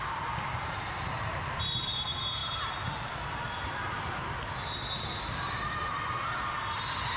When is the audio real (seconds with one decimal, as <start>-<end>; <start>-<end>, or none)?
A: 0.0-7.2